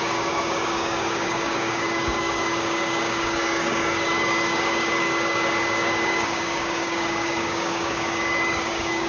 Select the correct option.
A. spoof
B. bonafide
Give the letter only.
A